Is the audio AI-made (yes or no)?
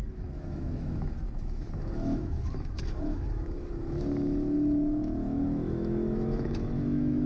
yes